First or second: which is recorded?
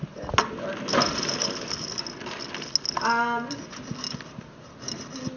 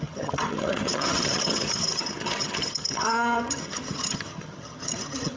first